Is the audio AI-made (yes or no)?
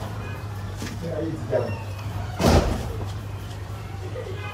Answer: yes